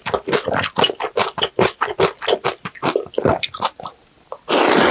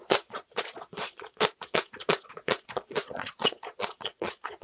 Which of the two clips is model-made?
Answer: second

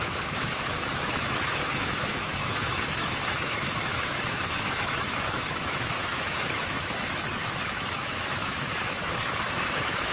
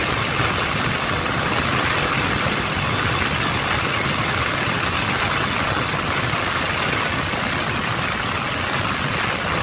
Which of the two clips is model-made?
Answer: first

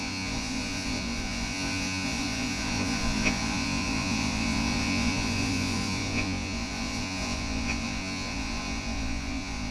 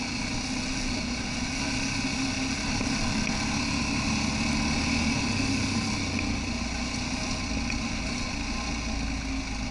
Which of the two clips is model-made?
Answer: first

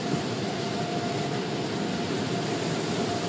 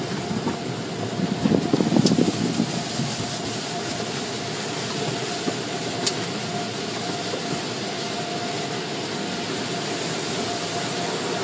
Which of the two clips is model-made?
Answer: first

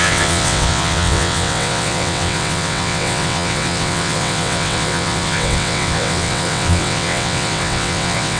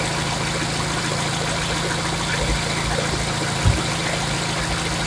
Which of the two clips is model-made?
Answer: first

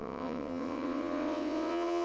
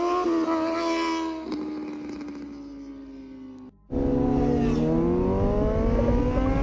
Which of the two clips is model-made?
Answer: first